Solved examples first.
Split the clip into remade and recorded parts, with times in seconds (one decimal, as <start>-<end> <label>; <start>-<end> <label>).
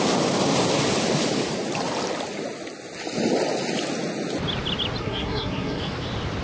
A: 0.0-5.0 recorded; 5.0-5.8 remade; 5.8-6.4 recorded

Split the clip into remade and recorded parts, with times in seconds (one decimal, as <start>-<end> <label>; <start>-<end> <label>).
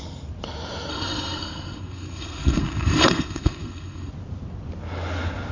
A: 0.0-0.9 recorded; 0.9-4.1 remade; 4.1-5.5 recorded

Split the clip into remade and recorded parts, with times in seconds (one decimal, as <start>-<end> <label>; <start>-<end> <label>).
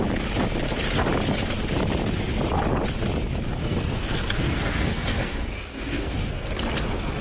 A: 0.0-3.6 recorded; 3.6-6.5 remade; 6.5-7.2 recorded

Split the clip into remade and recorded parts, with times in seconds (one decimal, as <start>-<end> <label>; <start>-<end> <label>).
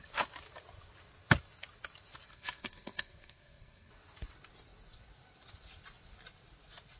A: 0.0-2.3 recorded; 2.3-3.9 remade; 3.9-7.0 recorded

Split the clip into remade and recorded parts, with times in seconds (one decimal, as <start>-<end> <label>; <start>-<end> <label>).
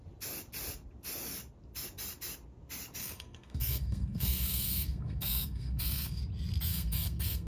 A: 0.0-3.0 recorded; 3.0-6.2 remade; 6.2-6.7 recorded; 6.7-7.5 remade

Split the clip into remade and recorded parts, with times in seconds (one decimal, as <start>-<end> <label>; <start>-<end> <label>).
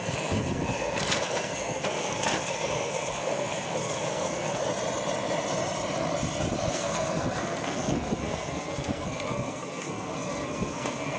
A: 0.0-4.6 remade; 4.6-6.7 recorded; 6.7-11.2 remade